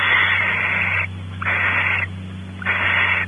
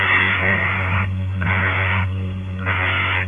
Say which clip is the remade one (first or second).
second